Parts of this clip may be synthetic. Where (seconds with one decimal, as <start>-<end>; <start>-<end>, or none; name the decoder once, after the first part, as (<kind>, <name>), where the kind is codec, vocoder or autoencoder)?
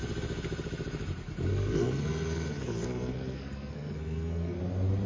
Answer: 1.5-4.6 (codec, SNAC)